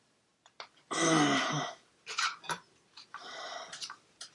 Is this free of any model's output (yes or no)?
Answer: yes